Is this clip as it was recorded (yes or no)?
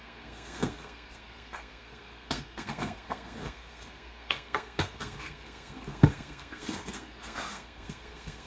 no